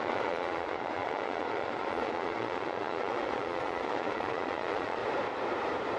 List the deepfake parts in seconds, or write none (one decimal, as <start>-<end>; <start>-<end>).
0.0-5.0